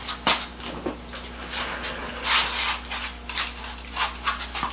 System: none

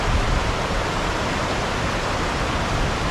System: none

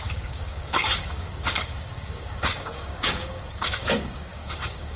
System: codec, DAC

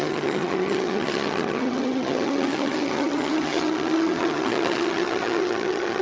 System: vocoder, HiFi-GAN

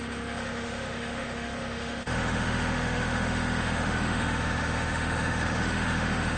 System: autoencoder, DAC-VAE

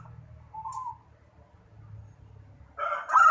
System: vocoder, BigVGAN v2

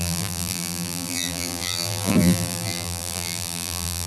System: vocoder, BigVGAN v2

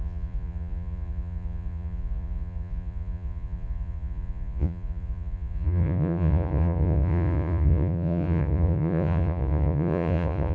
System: vocoder, Vocos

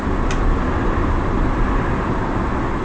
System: vocoder, BigVGAN v2